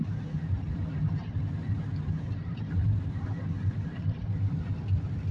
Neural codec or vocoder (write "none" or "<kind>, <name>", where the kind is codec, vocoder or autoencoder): none